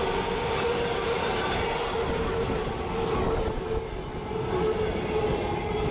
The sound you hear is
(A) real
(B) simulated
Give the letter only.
A